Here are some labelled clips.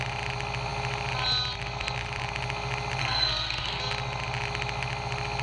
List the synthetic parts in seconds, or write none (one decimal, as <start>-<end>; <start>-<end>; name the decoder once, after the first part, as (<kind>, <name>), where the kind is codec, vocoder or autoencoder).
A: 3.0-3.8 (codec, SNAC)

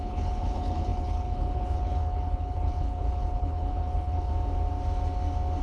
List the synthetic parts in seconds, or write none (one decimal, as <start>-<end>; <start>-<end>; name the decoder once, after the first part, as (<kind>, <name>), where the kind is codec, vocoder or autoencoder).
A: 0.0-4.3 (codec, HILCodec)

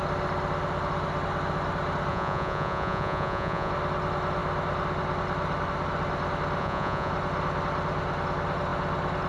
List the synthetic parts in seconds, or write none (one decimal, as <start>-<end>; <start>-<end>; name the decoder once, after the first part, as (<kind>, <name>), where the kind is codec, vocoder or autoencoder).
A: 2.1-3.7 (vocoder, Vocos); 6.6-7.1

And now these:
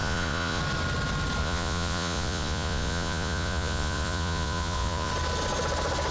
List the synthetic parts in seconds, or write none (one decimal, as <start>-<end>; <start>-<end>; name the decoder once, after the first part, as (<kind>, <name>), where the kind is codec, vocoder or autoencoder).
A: 0.0-0.6 (vocoder, Vocos); 1.4-5.1

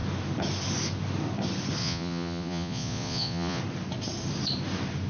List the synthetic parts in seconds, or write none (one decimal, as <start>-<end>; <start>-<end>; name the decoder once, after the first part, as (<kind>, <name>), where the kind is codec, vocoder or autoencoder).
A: 1.8-3.6 (vocoder, Vocos)